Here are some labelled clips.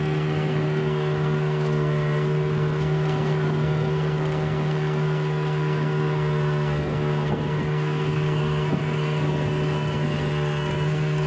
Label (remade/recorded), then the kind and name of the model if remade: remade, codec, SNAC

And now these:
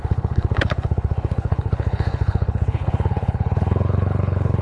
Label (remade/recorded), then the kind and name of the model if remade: remade, codec, HILCodec